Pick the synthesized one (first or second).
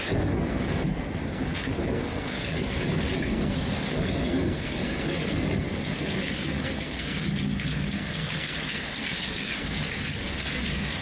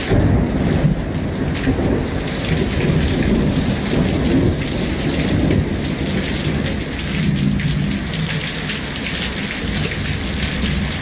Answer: first